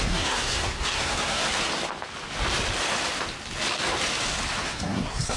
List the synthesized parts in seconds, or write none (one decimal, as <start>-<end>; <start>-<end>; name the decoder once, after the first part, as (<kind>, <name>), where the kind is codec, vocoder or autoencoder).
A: 0.0-1.4 (codec, SNAC); 4.6-5.4